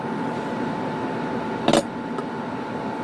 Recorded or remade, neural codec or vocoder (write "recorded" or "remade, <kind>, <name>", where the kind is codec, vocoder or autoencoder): recorded